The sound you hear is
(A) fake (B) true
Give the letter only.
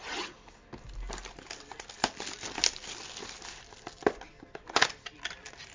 B